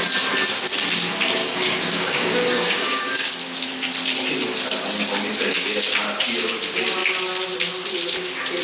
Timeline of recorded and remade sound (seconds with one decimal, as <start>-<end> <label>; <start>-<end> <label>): 0.0-1.4 recorded; 1.4-3.3 remade; 3.3-8.6 recorded